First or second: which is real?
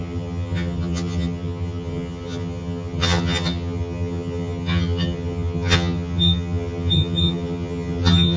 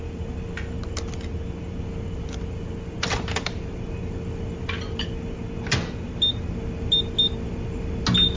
second